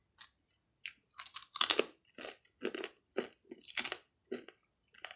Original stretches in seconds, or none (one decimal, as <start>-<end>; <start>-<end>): 0.0-5.2